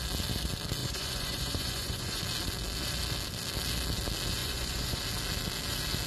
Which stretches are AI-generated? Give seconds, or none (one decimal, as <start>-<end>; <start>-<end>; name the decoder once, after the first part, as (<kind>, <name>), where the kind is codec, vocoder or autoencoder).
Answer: 0.8-2.2 (vocoder, Vocos); 4.4-5.0